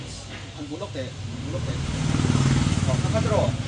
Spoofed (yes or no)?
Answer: no